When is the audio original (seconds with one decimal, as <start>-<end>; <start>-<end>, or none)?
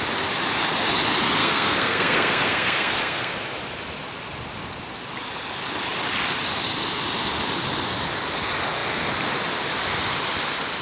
0.0-1.4; 3.3-10.8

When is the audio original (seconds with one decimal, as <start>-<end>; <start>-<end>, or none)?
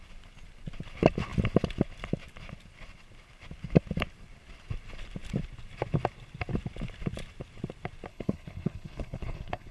0.0-8.1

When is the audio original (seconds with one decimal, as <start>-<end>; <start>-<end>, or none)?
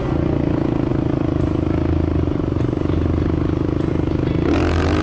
0.0-5.0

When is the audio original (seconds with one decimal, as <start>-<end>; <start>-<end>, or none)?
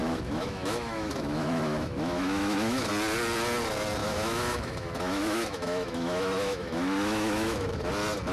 2.9-4.0; 7.9-8.3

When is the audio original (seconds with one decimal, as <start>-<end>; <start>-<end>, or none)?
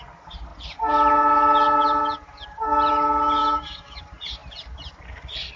0.0-3.4; 4.0-5.6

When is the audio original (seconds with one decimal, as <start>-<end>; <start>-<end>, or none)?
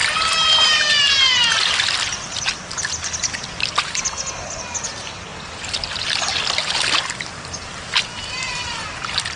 0.0-8.2; 8.9-9.4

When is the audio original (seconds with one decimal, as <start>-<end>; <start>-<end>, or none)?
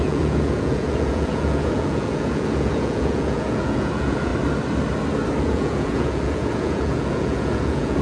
4.3-5.4